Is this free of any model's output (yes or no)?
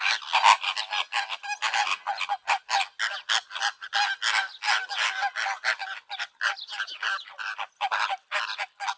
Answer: yes